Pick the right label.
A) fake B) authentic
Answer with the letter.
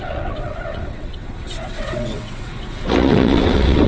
A